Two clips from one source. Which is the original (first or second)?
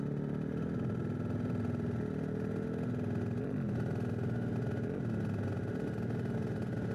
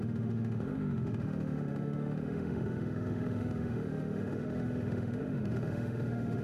first